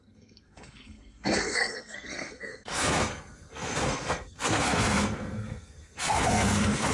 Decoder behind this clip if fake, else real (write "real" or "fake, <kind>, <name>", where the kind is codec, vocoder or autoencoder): fake, codec, SNAC